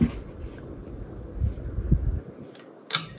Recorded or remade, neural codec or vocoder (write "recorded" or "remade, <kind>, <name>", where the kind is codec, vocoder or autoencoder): recorded